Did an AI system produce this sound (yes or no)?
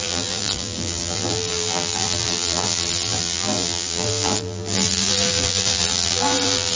yes